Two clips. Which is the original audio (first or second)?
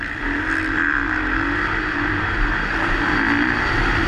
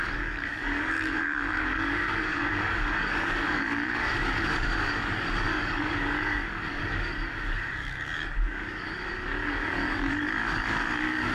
first